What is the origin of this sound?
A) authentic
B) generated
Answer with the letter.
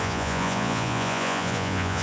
B